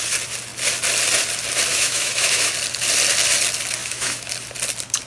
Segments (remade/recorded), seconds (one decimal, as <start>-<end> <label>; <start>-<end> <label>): 0.0-1.7 recorded; 1.7-2.5 remade; 2.5-3.8 recorded; 3.8-4.3 remade; 4.3-5.1 recorded